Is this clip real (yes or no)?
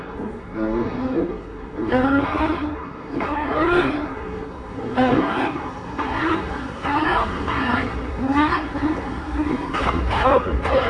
no